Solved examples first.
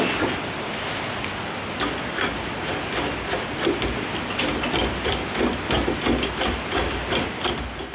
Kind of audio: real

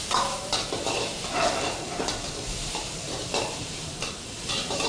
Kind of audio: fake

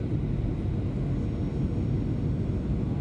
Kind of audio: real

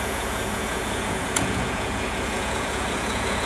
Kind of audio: fake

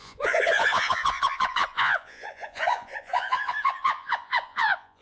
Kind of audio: fake